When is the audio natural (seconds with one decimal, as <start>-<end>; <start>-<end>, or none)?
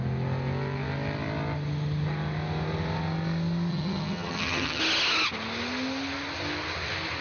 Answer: 0.0-3.7; 4.8-7.2